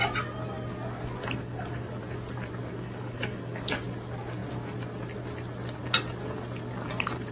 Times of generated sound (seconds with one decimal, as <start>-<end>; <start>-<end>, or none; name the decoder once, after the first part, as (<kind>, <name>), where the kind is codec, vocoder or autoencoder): 1.2-2.0 (codec, DAC); 2.7-3.7